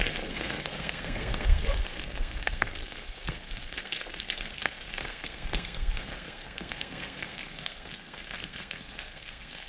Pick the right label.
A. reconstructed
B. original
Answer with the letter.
A